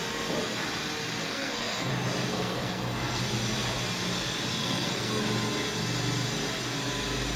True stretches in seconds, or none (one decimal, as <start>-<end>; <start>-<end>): 0.0-1.2; 1.9-2.3; 3.2-4.6; 5.2-7.4